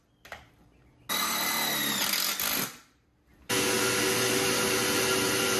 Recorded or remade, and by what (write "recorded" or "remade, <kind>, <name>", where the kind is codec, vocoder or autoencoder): recorded